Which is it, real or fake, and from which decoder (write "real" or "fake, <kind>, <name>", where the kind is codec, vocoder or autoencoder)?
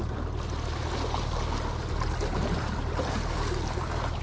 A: real